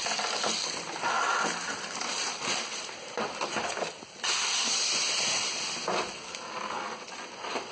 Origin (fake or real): real